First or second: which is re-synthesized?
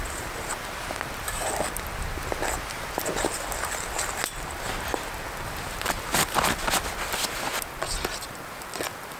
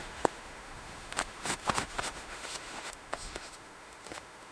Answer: second